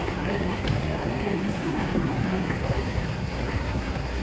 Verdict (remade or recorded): remade